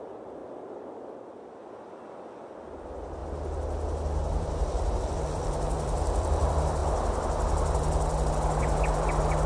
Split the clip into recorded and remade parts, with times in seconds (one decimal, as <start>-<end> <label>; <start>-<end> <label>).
0.0-6.8 remade; 6.8-8.3 recorded; 8.3-9.5 remade